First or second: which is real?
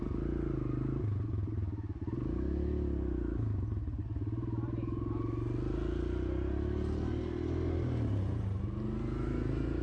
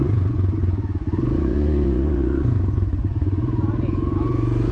first